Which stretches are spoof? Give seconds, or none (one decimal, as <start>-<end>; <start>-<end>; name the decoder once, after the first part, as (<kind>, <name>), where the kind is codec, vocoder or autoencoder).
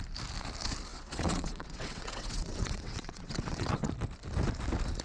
0.9-3.9 (vocoder, WaveNeXt)